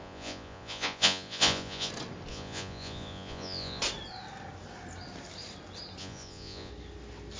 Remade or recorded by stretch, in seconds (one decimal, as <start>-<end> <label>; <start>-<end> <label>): 0.0-1.9 remade; 1.9-2.3 recorded; 2.3-3.8 remade; 3.8-6.0 recorded; 6.0-6.7 remade; 6.7-7.4 recorded